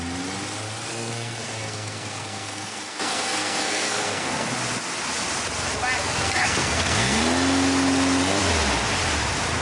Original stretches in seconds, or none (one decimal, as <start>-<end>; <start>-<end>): 0.0-0.9; 4.5-6.0; 7.2-9.6